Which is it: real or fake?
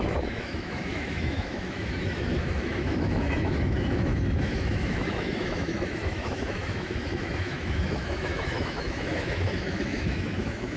fake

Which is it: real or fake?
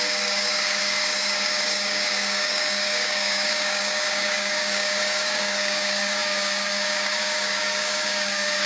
fake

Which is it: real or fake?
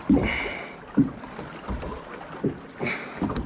real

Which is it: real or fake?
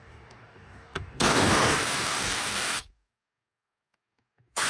fake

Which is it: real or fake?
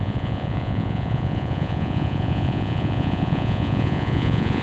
fake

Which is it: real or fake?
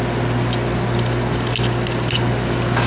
real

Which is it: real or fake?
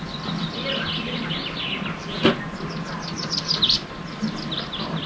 real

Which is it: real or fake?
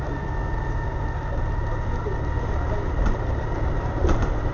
real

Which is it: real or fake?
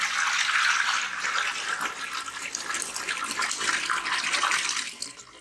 real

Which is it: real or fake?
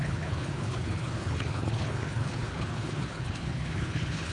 fake